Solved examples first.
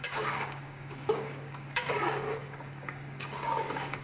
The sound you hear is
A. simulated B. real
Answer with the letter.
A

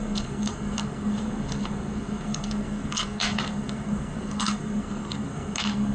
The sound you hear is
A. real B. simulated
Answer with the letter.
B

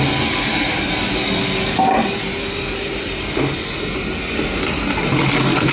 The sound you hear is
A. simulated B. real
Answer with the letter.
B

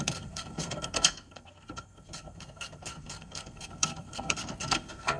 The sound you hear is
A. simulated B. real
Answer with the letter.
A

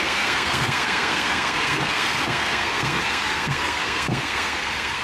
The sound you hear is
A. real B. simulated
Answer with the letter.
B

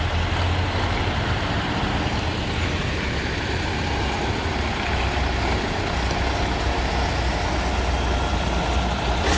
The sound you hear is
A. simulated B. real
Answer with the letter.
B